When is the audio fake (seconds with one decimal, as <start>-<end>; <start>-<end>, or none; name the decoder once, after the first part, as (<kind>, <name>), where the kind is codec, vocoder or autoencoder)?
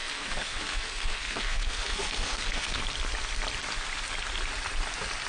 0.0-2.8 (codec, SNAC)